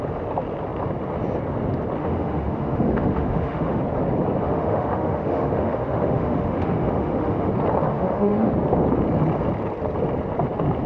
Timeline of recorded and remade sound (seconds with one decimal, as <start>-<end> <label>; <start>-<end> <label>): 0.0-2.0 recorded; 2.0-3.8 remade; 3.8-4.4 recorded; 4.4-7.5 remade; 7.5-7.9 recorded; 7.9-8.5 remade; 8.5-10.9 recorded